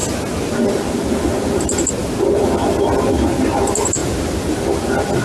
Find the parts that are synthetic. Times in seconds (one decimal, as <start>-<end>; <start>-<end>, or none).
none